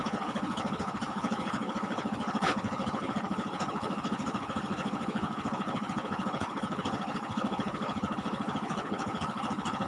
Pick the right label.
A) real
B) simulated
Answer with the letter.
B